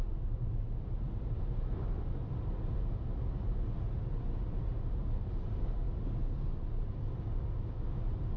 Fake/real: real